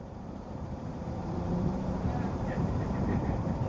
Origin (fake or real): fake